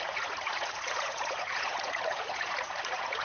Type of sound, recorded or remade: remade